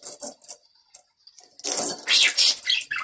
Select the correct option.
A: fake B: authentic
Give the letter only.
B